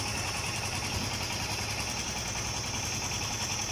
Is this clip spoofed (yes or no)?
no